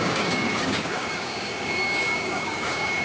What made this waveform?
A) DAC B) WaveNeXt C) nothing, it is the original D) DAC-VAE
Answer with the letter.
A